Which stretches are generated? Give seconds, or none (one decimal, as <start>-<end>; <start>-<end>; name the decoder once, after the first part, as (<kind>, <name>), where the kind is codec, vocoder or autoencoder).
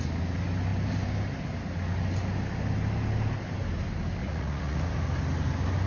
4.2-4.8 (vocoder, Vocos)